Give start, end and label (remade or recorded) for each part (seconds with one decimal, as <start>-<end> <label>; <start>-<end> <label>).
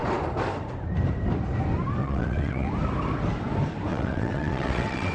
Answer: 0.0-2.0 recorded; 2.0-2.7 remade; 2.7-3.9 recorded; 3.9-5.1 remade